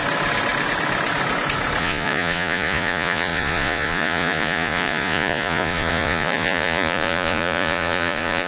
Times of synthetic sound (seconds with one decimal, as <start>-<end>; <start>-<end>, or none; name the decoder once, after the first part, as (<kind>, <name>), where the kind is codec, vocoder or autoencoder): 1.8-8.5 (vocoder, Vocos)